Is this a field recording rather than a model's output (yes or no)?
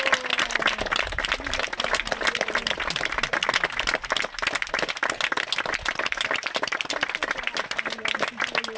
yes